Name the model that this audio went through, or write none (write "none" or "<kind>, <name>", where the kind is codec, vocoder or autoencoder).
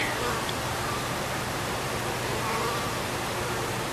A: vocoder, BigVGAN v2